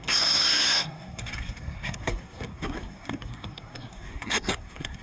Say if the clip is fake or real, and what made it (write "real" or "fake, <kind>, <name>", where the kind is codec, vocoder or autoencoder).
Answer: fake, codec, SNAC